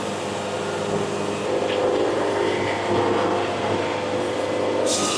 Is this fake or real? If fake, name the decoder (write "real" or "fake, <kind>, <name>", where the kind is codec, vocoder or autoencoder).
real